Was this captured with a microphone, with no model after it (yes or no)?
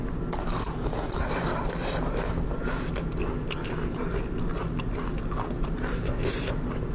yes